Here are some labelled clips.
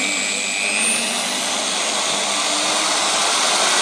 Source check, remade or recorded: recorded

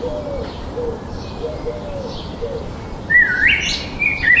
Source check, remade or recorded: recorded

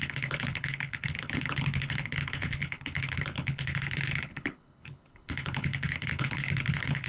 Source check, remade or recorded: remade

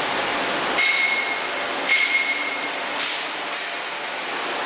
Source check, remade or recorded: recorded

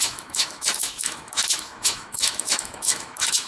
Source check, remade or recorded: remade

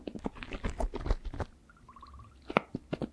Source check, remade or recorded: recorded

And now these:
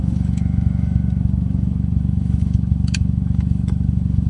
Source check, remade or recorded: remade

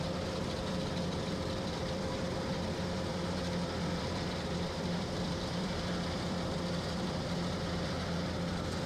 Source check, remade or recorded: remade